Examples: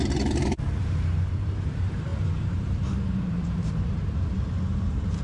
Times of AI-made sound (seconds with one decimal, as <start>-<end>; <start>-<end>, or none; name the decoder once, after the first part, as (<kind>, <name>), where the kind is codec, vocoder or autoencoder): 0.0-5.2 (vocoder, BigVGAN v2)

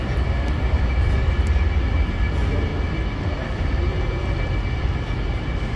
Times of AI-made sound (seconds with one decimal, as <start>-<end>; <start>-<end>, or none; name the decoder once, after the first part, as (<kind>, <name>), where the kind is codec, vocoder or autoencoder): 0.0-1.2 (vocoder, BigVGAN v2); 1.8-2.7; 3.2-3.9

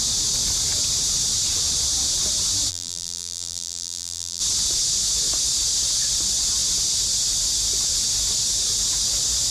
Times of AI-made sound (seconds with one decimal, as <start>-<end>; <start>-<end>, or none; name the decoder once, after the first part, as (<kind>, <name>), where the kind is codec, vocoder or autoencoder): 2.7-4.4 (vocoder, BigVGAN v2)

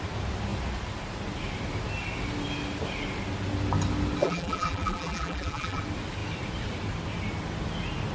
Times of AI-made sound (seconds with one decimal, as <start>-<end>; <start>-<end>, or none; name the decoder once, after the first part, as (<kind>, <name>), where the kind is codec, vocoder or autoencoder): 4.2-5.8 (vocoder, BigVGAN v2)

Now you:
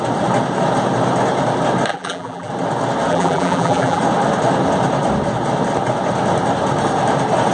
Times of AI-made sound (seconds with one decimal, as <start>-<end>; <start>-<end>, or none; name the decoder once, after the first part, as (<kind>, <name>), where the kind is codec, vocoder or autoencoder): 1.9-2.5 (vocoder, BigVGAN v2); 3.1-4.0

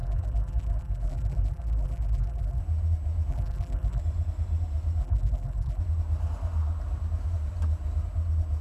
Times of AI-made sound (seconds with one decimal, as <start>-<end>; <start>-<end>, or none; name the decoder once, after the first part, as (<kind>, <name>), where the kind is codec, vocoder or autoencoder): 0.0-2.6 (vocoder, BigVGAN v2); 3.3-4.0; 5.0-5.8

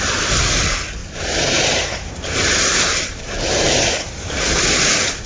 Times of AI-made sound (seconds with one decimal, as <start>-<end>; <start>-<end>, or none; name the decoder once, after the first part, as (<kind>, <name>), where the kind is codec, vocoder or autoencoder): 1.0-2.1 (vocoder, BigVGAN v2); 2.9-3.8